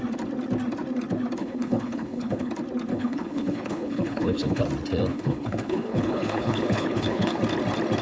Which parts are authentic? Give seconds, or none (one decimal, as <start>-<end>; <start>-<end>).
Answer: 0.0-1.4; 2.5-2.9; 4.6-5.1; 7.4-8.0